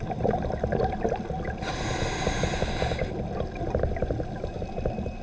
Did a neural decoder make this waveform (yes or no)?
no